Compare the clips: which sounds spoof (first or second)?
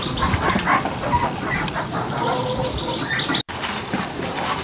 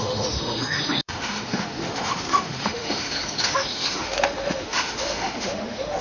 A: second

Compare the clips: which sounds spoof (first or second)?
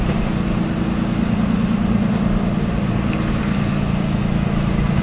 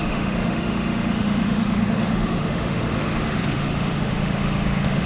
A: second